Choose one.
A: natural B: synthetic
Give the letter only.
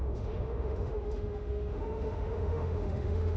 B